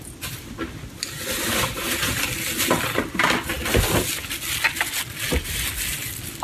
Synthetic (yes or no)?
no